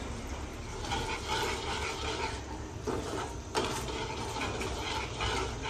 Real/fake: real